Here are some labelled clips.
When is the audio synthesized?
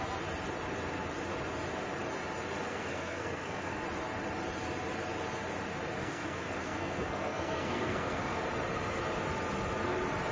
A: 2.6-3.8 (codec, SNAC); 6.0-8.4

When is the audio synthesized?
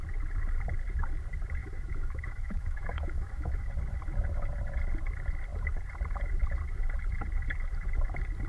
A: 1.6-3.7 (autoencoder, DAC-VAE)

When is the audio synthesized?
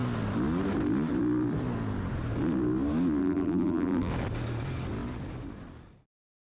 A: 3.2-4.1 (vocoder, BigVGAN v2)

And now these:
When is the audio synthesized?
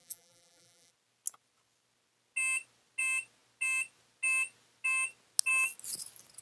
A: 0.0-0.9 (vocoder, BigVGAN v2)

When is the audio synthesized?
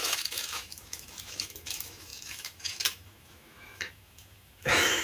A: 0.0-5.0 (autoencoder, DAC-VAE)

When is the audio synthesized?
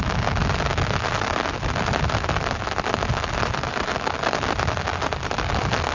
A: none